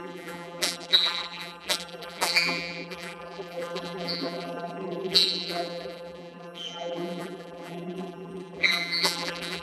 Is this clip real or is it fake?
fake